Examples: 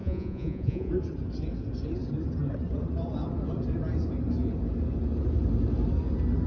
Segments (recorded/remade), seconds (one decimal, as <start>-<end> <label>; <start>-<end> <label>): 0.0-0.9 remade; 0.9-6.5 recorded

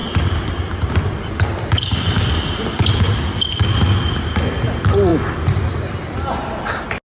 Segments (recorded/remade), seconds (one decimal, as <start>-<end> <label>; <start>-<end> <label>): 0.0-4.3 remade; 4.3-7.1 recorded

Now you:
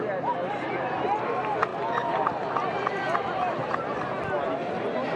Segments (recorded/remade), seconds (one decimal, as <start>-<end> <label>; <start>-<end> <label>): 0.0-5.2 recorded

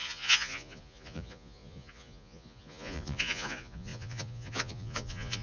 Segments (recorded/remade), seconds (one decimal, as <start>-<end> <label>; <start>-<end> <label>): 0.0-5.4 remade

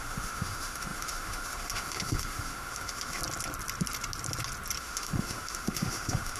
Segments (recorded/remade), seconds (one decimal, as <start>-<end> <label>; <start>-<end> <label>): 0.0-3.2 remade; 3.2-4.8 recorded; 4.8-6.4 remade

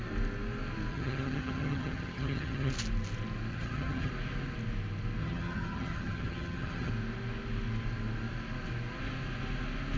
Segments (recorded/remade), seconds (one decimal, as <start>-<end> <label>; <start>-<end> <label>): 0.0-0.9 recorded; 0.9-2.7 remade; 2.7-3.5 recorded; 3.5-4.1 remade; 4.1-5.2 recorded; 5.2-6.9 remade; 6.9-10.0 recorded

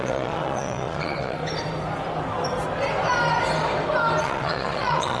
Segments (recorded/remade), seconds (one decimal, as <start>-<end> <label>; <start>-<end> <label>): 0.0-1.4 remade; 1.4-4.2 recorded; 4.2-5.2 remade